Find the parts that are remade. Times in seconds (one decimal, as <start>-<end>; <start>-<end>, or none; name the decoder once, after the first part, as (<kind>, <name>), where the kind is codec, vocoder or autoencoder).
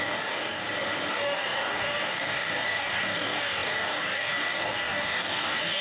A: 0.0-0.6 (codec, DAC); 1.1-5.8